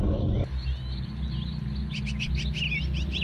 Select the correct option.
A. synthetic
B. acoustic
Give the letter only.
B